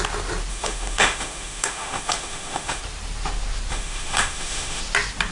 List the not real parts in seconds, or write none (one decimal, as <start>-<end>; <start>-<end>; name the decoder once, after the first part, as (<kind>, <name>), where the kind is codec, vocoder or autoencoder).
0.5-2.8 (autoencoder, DAC-VAE); 3.7-4.8